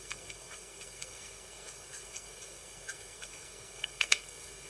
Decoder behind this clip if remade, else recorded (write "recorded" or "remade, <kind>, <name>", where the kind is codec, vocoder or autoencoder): remade, codec, SNAC